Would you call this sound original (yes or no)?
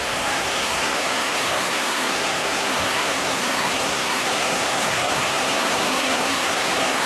no